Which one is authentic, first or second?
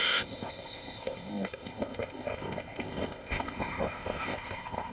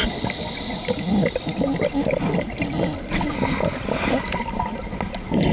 second